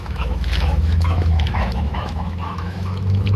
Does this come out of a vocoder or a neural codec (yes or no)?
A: yes